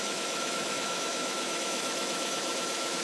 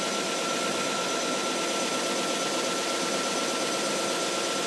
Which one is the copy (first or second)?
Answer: first